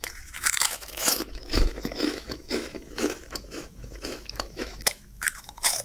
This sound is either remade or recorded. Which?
remade